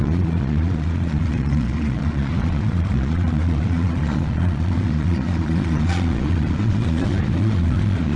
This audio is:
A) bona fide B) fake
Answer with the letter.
B